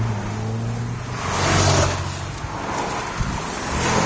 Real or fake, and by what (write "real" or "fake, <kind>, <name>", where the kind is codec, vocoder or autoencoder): real